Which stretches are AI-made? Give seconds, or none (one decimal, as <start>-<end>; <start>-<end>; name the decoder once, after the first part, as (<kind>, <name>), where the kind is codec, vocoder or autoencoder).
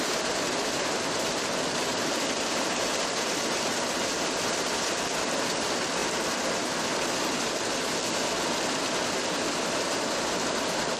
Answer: none